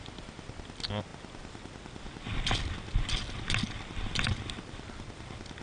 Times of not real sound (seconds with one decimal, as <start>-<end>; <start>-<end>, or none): none

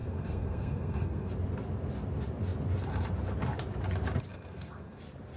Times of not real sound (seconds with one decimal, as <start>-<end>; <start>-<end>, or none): 0.0-1.3; 4.3-5.0

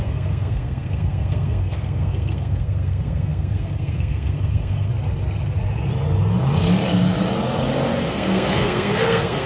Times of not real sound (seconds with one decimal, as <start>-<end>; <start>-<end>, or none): 0.0-4.9; 8.1-9.5

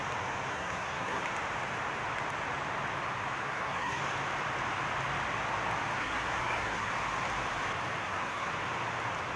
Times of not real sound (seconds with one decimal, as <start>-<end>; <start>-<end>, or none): 0.5-1.2; 3.4-4.0; 6.0-6.9; 8.0-8.5

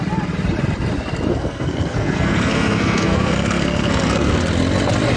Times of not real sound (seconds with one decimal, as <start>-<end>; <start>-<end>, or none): 1.3-4.4

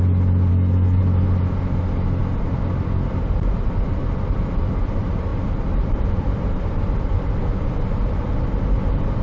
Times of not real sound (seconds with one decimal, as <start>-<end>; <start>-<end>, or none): 0.5-1.0